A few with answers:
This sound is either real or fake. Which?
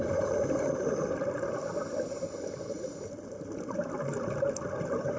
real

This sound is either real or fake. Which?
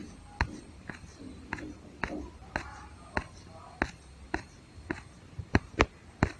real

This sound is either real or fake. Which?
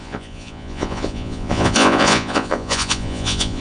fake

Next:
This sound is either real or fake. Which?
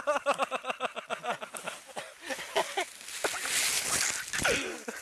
real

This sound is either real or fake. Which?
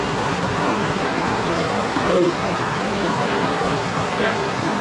fake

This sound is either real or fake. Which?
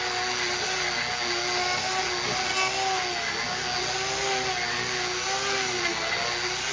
real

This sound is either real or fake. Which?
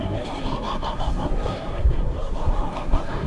fake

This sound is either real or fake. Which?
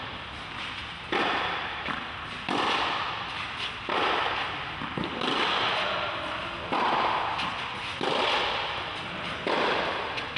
real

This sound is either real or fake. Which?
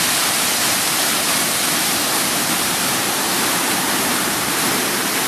fake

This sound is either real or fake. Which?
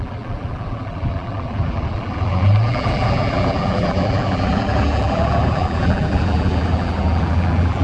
fake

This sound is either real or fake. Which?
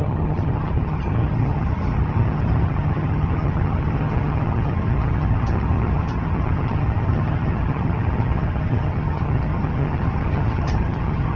fake